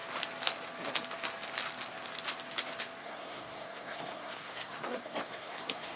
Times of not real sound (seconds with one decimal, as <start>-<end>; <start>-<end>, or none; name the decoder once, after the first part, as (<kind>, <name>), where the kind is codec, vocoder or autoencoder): 3.0-6.0 (codec, SNAC)